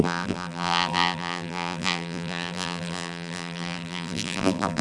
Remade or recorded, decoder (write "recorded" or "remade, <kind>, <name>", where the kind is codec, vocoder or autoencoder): remade, vocoder, BigVGAN v2